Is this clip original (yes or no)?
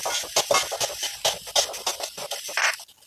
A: yes